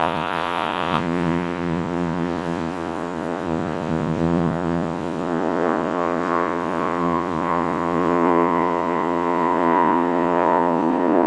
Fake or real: fake